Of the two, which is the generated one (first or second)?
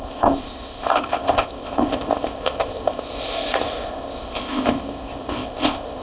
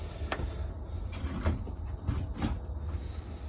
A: first